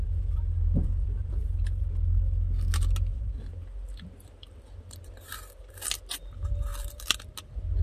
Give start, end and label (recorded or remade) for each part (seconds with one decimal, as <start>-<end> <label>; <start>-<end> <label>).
0.0-1.4 remade; 1.4-3.1 recorded; 3.1-5.7 remade; 5.7-6.7 recorded; 6.7-7.3 remade; 7.3-7.8 recorded